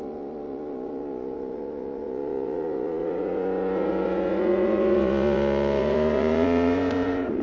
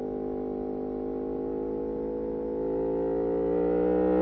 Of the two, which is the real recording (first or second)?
second